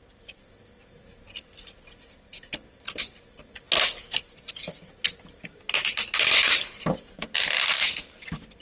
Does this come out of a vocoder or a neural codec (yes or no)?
no